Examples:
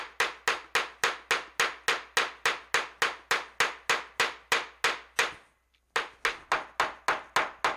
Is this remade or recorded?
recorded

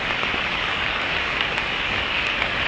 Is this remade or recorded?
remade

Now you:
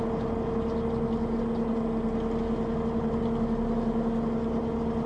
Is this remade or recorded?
recorded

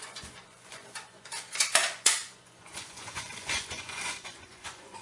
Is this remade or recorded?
remade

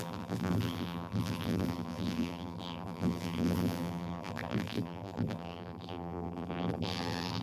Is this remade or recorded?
remade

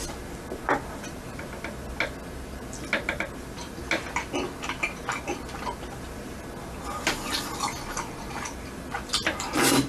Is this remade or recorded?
recorded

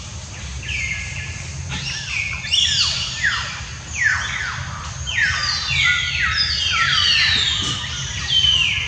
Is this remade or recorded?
recorded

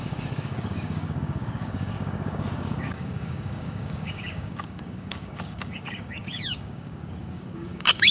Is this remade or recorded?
remade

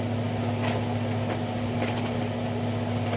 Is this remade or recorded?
remade